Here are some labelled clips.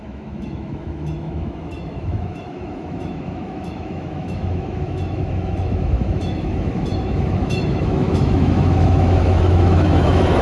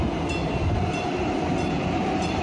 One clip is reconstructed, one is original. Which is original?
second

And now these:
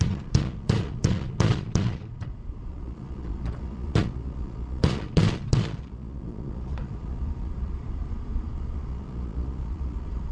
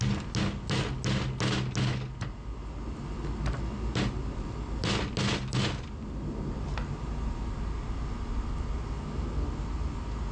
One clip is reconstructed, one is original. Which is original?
second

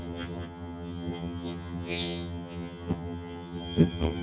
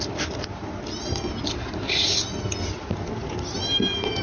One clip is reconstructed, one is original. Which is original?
second